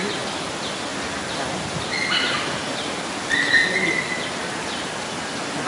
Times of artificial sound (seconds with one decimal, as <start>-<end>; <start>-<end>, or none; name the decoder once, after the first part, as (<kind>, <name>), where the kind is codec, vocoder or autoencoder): none